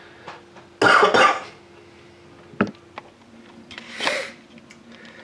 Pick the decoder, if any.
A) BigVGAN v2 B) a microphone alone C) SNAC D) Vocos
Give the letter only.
B